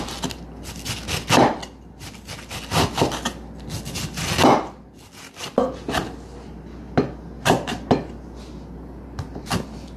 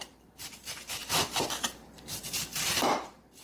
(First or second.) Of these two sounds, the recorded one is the first